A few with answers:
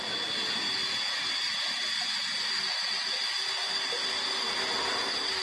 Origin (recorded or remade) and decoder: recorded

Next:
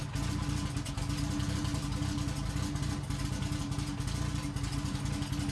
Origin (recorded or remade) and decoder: recorded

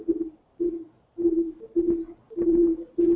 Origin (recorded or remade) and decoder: recorded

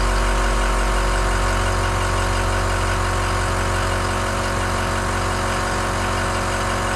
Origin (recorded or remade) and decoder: recorded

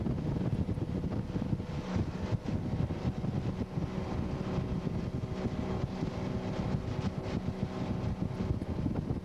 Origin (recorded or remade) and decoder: recorded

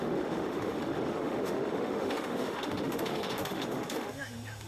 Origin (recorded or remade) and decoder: remade, autoencoder, DAC-VAE